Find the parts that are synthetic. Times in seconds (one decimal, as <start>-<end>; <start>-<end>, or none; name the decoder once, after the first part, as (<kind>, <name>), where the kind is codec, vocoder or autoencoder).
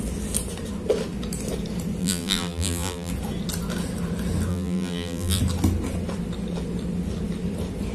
2.0-3.1 (vocoder, BigVGAN v2); 4.5-5.4